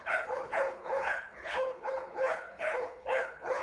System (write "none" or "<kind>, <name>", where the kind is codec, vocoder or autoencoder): codec, HILCodec